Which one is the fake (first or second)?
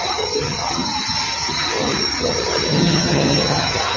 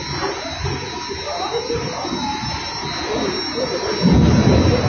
first